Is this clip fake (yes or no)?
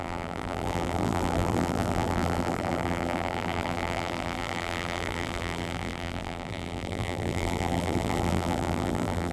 yes